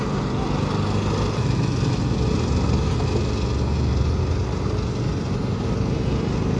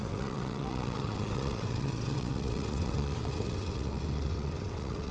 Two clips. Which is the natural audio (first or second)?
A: first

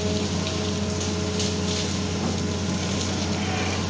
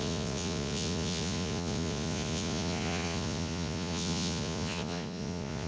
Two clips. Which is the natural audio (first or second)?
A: first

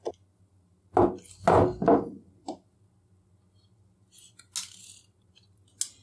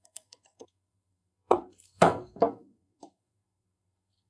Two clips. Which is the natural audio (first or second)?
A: first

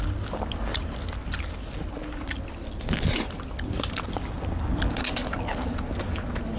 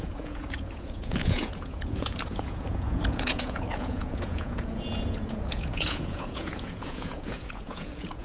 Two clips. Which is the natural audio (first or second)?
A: first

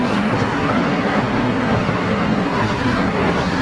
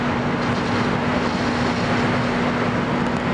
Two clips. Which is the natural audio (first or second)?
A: second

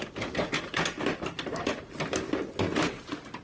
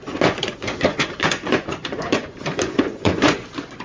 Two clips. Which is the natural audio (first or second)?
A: first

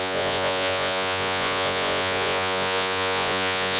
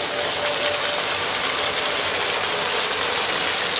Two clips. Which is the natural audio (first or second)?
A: second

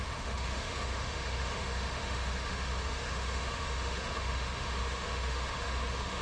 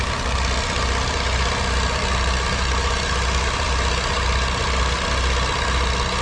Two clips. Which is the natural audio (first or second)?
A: second